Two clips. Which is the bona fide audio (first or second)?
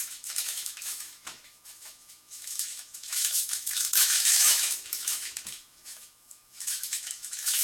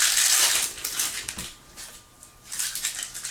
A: second